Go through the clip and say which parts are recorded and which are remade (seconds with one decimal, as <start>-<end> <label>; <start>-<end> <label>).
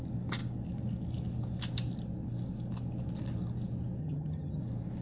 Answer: 0.0-4.0 recorded; 4.0-4.6 remade; 4.6-5.0 recorded